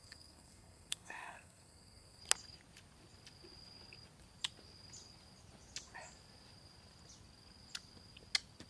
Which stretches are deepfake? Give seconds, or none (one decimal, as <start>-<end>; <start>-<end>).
0.0-2.2